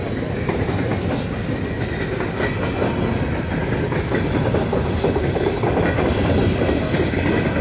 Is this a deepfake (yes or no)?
no